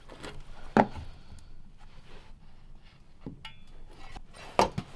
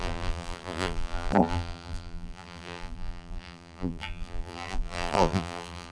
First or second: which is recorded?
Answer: first